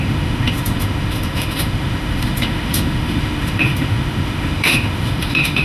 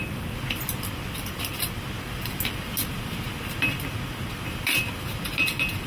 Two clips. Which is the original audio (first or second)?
second